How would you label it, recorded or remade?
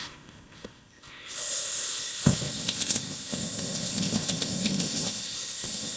remade